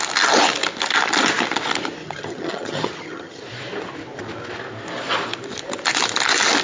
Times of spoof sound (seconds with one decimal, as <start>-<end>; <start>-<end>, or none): 2.0-3.4